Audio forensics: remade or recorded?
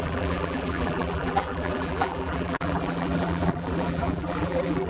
remade